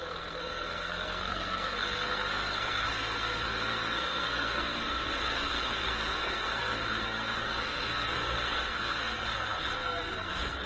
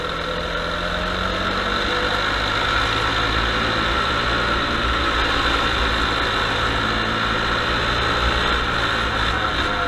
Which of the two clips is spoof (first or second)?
first